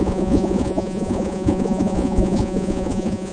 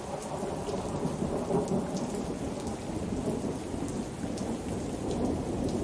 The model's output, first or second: first